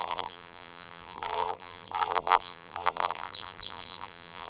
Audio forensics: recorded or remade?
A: remade